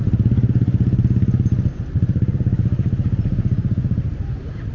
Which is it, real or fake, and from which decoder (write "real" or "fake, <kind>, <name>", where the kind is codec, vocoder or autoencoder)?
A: real